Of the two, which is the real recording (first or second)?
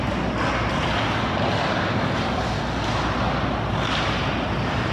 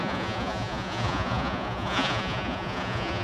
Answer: first